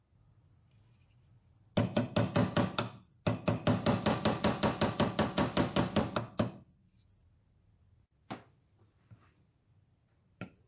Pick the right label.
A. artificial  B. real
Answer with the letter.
B